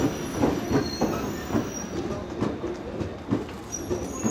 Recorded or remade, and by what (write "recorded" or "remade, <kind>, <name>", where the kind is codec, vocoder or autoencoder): recorded